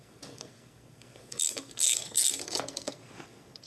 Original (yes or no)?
no